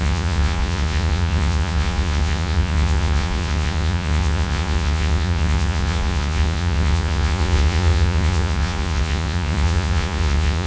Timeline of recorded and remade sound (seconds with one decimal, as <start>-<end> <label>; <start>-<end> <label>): 0.0-10.7 remade